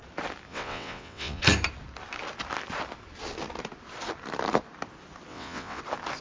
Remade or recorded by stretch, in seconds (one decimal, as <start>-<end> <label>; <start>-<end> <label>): 0.0-0.5 recorded; 0.5-1.4 remade; 1.4-5.3 recorded; 5.3-5.8 remade; 5.8-6.2 recorded